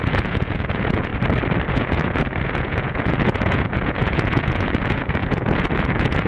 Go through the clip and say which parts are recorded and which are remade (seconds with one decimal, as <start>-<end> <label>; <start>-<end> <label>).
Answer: 0.0-1.1 remade; 1.1-1.7 recorded; 1.7-6.3 remade